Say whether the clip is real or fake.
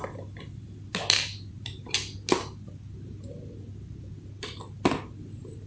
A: real